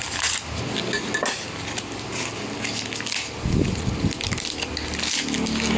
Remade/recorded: recorded